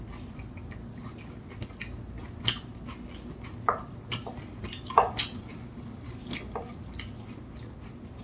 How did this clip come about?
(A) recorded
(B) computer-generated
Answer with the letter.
A